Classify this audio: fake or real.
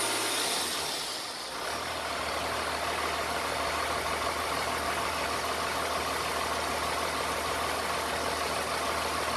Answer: real